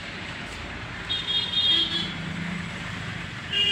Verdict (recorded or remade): remade